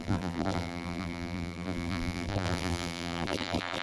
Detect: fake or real fake